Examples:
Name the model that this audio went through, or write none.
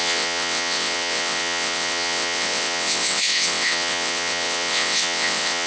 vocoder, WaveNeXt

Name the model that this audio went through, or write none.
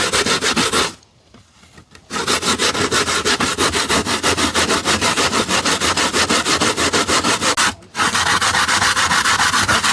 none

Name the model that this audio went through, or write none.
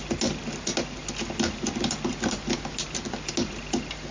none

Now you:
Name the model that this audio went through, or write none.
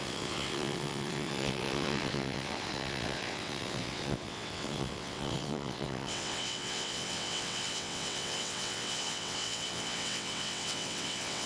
vocoder, WaveNeXt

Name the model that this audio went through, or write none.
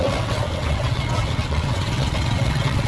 vocoder, WaveNeXt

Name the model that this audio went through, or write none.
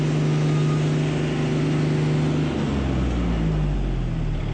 none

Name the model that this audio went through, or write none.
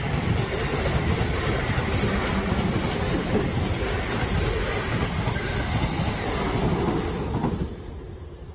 none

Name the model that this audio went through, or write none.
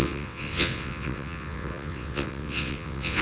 vocoder, WaveNeXt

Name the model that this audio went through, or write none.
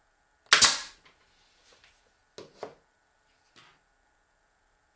none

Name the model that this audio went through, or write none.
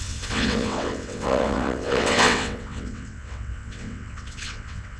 vocoder, WaveNeXt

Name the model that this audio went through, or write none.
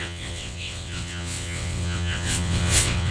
vocoder, WaveNeXt